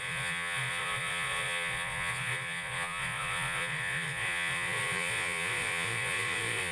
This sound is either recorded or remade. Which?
remade